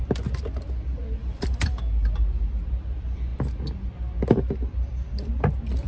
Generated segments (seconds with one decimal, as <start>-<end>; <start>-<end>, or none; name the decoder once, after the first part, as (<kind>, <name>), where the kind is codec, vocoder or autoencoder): 1.2-1.8 (vocoder, BigVGAN v2)